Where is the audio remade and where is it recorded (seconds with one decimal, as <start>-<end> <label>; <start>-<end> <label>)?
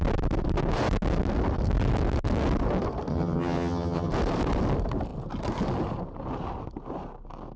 0.0-3.1 recorded; 3.1-4.1 remade; 4.1-7.6 recorded